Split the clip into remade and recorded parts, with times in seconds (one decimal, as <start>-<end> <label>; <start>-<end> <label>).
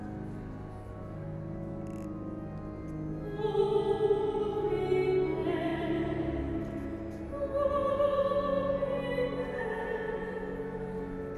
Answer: 0.0-5.7 recorded; 5.7-6.4 remade; 6.4-11.4 recorded